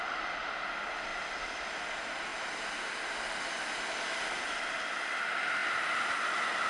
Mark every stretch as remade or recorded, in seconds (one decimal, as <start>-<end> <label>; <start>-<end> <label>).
0.0-6.7 recorded